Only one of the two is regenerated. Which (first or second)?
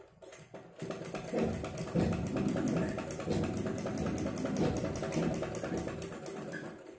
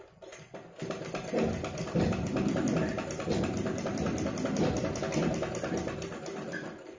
second